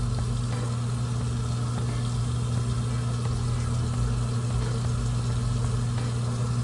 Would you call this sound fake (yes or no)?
no